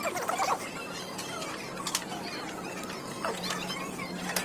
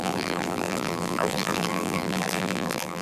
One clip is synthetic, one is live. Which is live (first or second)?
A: first